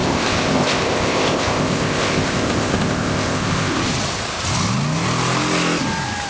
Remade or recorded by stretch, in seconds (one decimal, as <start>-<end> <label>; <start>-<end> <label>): 0.0-3.8 remade; 3.8-6.3 recorded